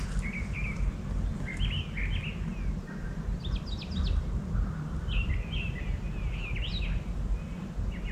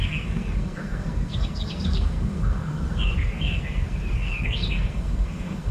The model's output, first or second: second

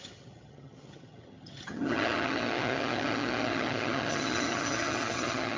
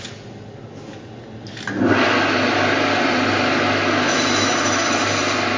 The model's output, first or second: first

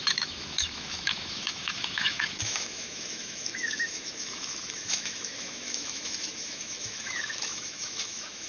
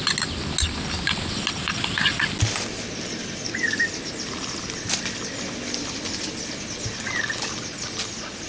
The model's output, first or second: first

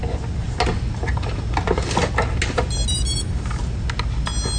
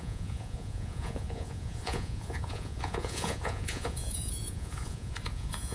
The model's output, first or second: second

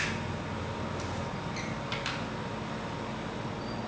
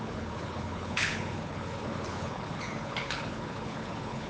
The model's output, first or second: second